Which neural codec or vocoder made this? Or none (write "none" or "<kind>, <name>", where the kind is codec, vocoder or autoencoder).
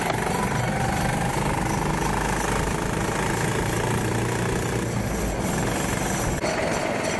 none